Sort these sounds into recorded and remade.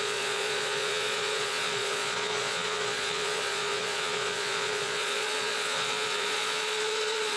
remade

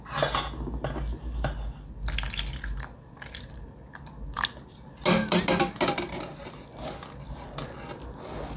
recorded